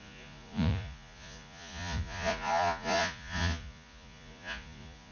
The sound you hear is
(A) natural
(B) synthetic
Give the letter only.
B